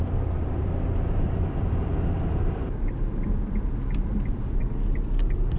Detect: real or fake fake